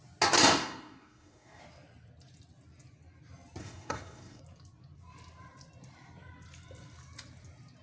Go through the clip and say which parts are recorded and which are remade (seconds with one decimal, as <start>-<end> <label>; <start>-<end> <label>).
0.0-0.6 recorded; 0.6-1.6 remade; 1.6-3.6 recorded; 3.6-4.4 remade; 4.4-7.8 recorded